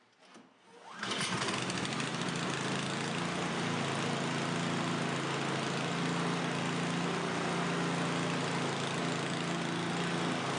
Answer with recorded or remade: recorded